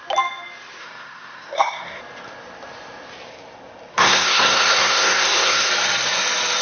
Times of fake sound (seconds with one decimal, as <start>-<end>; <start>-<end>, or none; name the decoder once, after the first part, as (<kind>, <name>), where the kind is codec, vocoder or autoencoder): 0.8-2.0 (codec, SNAC); 3.9-5.7